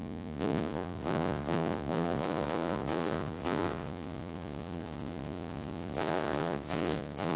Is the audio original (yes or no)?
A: no